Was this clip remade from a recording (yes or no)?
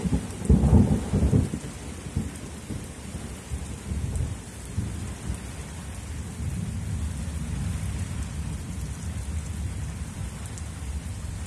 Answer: yes